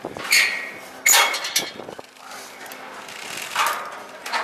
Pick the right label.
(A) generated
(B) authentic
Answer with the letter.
B